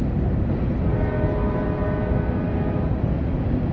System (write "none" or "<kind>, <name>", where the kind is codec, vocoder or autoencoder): none